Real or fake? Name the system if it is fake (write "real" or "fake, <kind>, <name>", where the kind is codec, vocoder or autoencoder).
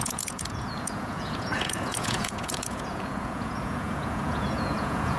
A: fake, vocoder, Vocos